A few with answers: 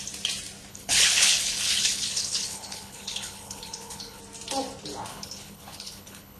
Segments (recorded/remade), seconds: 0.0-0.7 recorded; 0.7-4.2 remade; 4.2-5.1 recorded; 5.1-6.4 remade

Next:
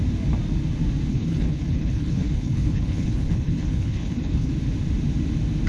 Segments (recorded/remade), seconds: 0.0-1.1 recorded; 1.1-4.5 remade; 4.5-5.7 recorded

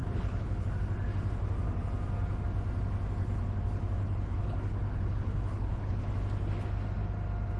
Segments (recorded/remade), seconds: 0.0-0.7 remade; 0.7-4.0 recorded; 4.0-6.0 remade; 6.0-7.6 recorded

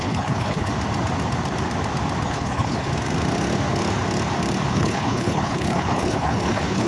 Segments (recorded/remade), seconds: 0.0-0.7 remade; 0.7-2.3 recorded; 2.3-2.9 remade; 2.9-4.7 recorded; 4.7-6.9 remade

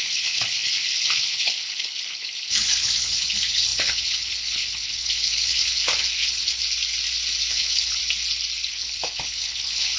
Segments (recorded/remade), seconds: 0.0-6.6 remade; 6.6-7.5 recorded; 7.5-8.0 remade; 8.0-8.7 recorded; 8.7-10.0 remade

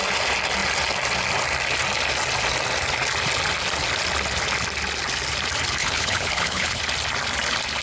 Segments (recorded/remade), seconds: 0.0-5.8 recorded; 5.8-6.8 remade; 6.8-7.8 recorded

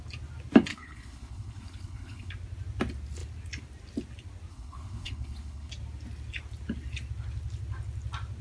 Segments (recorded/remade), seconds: 0.0-0.7 recorded; 0.7-2.3 remade; 2.3-4.5 recorded; 4.5-5.7 remade; 5.7-8.4 recorded